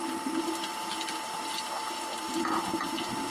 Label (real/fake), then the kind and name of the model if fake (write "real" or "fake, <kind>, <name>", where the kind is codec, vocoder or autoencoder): fake, vocoder, BigVGAN v2